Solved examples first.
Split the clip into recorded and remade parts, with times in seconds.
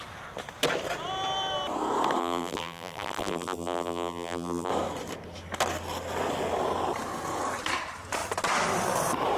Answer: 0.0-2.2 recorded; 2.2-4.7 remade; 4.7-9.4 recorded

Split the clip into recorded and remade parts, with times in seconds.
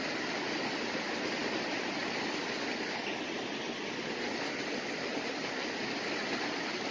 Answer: 0.0-6.9 recorded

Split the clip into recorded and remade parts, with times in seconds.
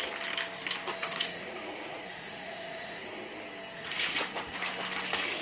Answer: 0.0-1.0 recorded; 1.0-3.0 remade; 3.0-3.8 recorded; 3.8-4.7 remade; 4.7-5.4 recorded